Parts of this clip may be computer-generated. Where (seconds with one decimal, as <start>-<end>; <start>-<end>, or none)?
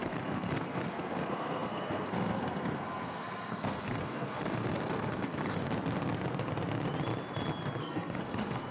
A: 0.0-5.6; 7.8-8.7